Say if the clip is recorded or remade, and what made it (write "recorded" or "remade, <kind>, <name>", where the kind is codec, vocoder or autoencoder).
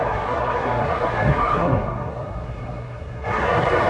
remade, codec, SNAC